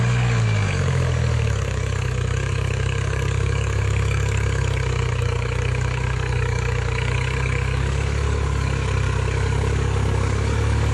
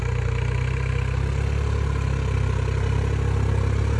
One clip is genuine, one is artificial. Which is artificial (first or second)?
first